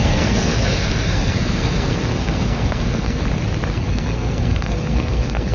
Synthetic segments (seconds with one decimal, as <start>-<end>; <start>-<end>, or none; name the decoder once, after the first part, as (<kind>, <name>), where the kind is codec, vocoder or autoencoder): 0.0-3.2 (codec, SNAC); 3.7-5.5

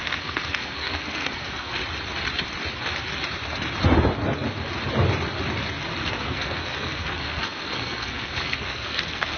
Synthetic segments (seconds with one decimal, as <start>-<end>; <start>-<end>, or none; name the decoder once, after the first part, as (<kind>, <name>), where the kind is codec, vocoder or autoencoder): 0.0-1.8 (codec, SNAC); 6.1-9.4

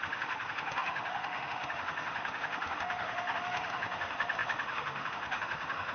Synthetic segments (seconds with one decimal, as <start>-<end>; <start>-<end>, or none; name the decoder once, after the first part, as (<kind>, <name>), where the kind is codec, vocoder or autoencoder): 0.0-5.9 (autoencoder, DAC-VAE)

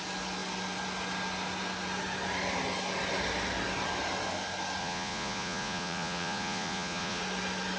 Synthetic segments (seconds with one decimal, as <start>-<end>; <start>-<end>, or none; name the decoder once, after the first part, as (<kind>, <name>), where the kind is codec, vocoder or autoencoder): 4.8-7.2 (vocoder, Vocos)

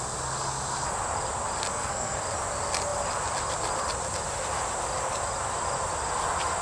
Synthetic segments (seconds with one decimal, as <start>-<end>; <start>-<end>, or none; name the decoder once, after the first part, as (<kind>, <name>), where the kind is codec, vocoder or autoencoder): 1.7-2.2 (codec, SNAC)

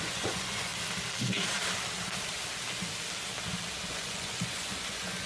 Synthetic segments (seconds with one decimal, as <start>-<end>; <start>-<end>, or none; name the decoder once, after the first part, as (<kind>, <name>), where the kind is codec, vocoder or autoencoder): 0.0-0.7 (vocoder, Vocos); 3.9-5.3

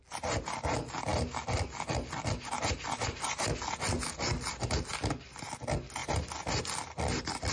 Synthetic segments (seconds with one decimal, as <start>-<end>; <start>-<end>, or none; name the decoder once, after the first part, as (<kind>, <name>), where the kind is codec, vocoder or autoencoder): none